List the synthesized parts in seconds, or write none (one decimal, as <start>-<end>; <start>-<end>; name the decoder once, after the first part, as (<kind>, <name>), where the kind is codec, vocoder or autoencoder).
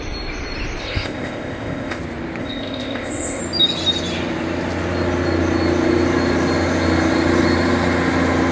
0.8-2.0 (codec, ZipCodec); 2.4-3.4